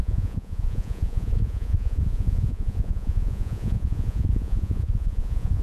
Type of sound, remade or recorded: remade